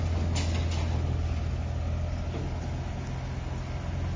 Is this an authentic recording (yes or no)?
yes